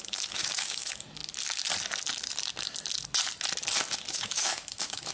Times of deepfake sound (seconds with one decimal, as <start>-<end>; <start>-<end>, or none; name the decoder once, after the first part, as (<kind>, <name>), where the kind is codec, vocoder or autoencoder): 0.0-1.2 (autoencoder, DAC-VAE); 4.1-5.1